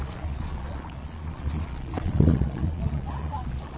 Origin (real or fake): fake